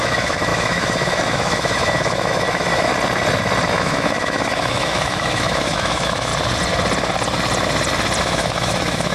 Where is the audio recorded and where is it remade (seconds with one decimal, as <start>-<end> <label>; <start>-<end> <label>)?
0.0-2.9 remade; 2.9-3.7 recorded; 3.7-6.3 remade; 6.3-8.2 recorded; 8.2-9.1 remade